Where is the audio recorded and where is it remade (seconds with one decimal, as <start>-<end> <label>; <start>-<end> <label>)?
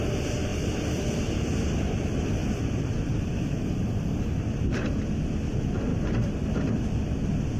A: 0.0-2.4 recorded; 2.4-5.1 remade; 5.1-5.9 recorded; 5.9-6.7 remade; 6.7-7.6 recorded